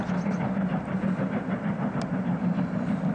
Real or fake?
real